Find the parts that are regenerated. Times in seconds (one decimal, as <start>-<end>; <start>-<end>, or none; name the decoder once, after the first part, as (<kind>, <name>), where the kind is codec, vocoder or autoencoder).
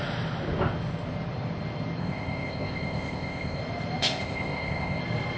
2.0-3.6 (codec, ZipCodec); 4.0-5.0